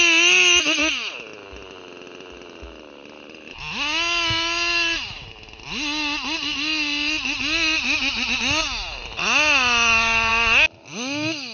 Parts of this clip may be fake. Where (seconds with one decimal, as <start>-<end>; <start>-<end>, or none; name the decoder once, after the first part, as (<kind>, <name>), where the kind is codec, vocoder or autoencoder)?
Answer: none